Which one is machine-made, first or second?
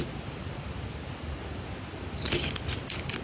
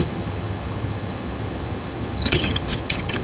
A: second